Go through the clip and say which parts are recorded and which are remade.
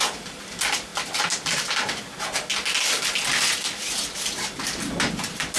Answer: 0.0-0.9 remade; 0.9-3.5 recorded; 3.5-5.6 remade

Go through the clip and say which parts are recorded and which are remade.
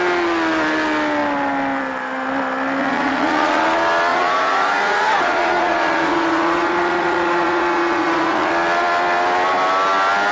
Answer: 0.0-2.8 recorded; 2.8-3.6 remade; 3.6-4.1 recorded; 4.1-8.5 remade; 8.5-10.3 recorded